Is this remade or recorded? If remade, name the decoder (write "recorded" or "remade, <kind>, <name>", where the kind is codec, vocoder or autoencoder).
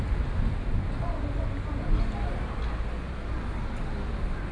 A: recorded